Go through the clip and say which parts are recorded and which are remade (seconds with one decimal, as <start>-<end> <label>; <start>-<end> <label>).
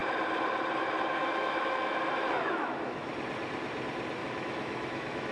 0.0-1.2 recorded; 1.2-3.1 remade; 3.1-4.2 recorded; 4.2-5.3 remade